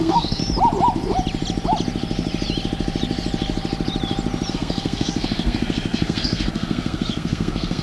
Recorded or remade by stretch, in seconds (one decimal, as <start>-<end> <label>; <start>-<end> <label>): 0.0-0.4 remade; 0.4-4.5 recorded; 4.5-7.8 remade